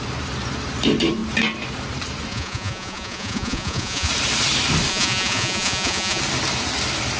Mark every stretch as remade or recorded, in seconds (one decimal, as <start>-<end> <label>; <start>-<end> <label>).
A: 0.0-2.3 recorded; 2.3-4.1 remade; 4.1-4.9 recorded; 4.9-6.2 remade; 6.2-7.2 recorded